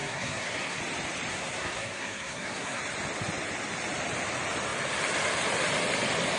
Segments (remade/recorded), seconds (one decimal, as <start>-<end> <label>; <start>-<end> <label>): 0.0-0.8 remade; 0.8-1.3 recorded; 1.3-2.8 remade; 2.8-6.4 recorded